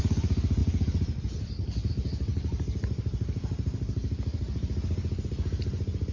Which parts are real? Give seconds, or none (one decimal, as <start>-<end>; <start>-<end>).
0.0-6.1